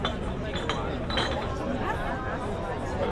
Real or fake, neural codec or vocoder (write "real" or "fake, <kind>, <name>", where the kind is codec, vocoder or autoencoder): real